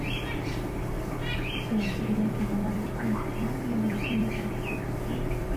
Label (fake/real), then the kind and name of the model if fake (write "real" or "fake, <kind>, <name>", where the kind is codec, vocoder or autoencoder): fake, vocoder, BigVGAN v2